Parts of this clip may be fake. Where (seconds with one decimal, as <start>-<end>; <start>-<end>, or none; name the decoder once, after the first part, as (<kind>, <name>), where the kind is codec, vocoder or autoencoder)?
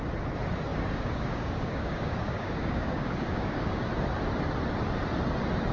0.7-3.9 (codec, DAC)